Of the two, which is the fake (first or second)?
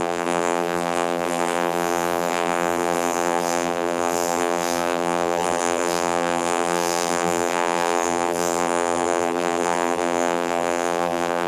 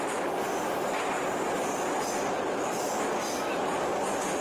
first